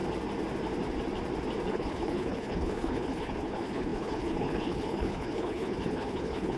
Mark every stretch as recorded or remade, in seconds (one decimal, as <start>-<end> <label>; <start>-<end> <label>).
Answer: 0.0-1.7 recorded; 1.7-6.6 remade